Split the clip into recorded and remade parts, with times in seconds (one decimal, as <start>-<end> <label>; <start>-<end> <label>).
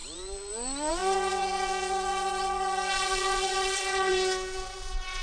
0.0-5.2 remade